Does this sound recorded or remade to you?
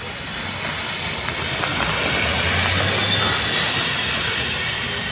recorded